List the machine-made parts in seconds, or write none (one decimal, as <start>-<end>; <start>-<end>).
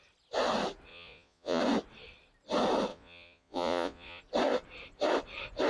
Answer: 0.9-1.6; 2.9-4.2